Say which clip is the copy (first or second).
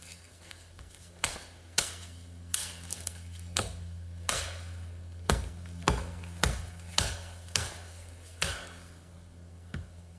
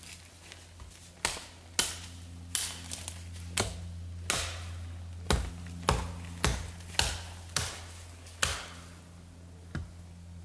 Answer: first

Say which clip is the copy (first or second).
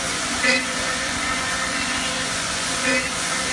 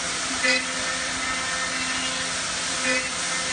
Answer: first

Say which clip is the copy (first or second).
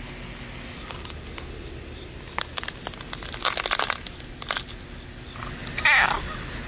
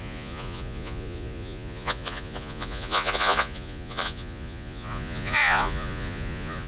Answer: second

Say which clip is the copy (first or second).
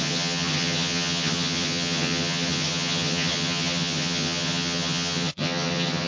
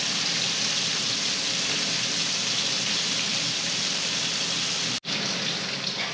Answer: first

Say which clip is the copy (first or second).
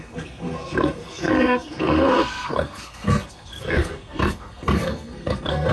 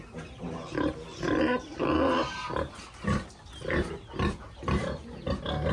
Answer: first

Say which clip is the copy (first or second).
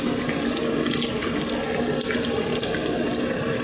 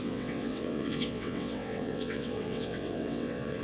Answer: second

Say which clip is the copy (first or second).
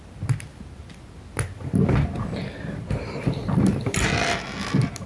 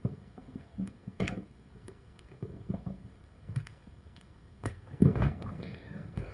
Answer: second